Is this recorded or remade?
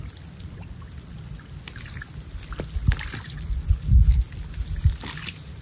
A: recorded